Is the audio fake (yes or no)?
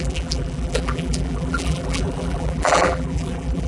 yes